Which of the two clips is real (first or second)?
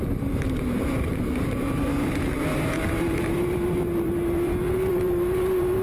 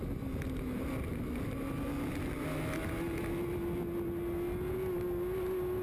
second